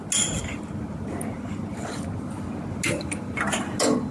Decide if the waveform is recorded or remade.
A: recorded